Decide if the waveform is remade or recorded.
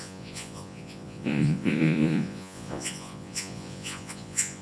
remade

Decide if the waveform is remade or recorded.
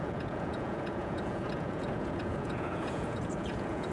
remade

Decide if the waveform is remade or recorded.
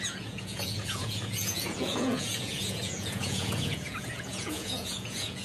remade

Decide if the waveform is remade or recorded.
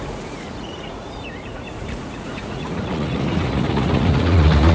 remade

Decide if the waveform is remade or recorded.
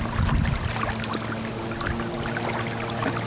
recorded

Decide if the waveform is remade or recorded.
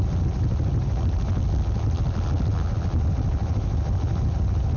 recorded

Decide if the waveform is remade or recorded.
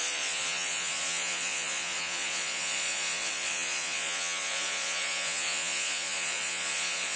remade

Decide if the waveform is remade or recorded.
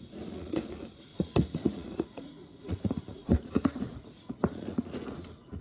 remade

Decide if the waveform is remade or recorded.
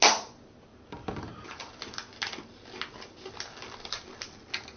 recorded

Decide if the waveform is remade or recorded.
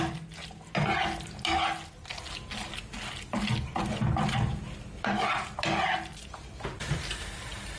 recorded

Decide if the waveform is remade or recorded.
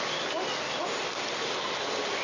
recorded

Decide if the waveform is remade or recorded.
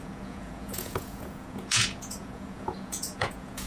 remade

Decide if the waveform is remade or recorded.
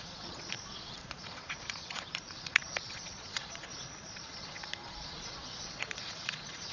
remade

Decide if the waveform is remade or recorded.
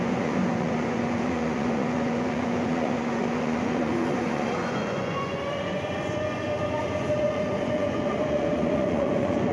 remade